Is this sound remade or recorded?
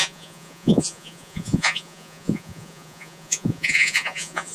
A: remade